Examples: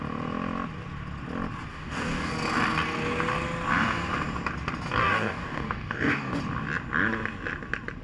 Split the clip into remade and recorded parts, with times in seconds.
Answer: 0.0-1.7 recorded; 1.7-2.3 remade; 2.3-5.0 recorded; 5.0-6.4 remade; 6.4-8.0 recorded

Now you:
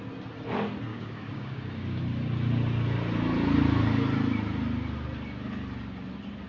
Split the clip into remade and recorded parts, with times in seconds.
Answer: 0.0-0.9 recorded; 0.9-2.0 remade; 2.0-6.5 recorded